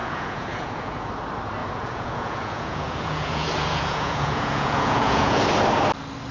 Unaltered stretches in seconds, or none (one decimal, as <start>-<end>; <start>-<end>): 1.1-1.6; 5.4-6.3